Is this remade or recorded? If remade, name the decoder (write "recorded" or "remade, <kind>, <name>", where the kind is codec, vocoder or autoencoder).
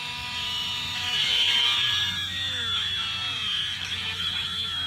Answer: remade, autoencoder, DAC-VAE